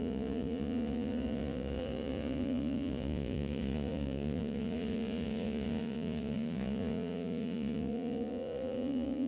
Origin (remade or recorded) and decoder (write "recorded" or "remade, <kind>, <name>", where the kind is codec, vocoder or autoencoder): remade, vocoder, Vocos